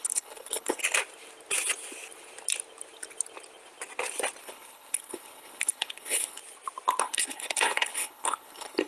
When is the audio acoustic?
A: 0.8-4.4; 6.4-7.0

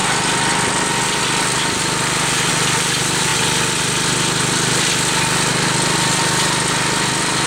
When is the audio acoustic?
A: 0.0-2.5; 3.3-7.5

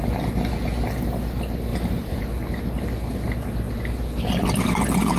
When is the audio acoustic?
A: 0.0-1.7; 2.2-5.2

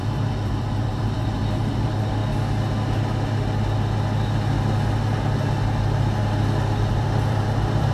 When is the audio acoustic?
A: 2.2-6.9

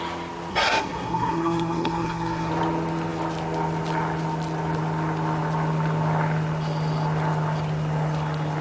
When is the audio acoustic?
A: 0.0-0.5; 2.5-8.6